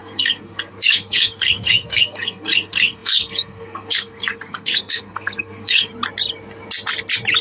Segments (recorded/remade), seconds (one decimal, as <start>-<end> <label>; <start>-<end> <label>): 0.0-5.9 remade; 5.9-7.4 recorded